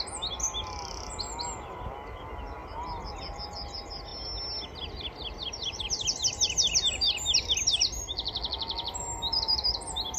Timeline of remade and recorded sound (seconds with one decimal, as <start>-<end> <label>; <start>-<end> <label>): 0.0-10.2 recorded